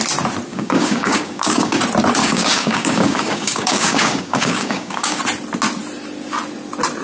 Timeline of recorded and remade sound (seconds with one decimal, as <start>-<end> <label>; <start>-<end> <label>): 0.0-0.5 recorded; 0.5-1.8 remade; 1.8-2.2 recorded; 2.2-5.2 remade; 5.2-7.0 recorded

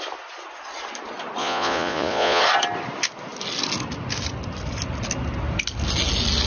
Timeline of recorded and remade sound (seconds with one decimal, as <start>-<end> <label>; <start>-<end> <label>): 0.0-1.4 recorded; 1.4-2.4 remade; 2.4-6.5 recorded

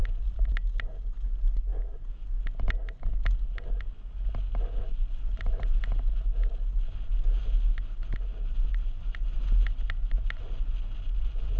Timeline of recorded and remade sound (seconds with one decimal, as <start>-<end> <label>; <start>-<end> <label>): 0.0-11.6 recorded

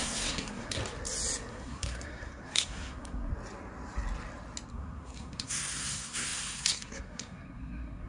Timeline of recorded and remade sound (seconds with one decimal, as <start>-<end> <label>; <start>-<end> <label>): 0.0-0.8 remade; 0.8-1.5 recorded; 1.5-3.3 remade; 3.3-4.7 recorded; 4.7-8.1 remade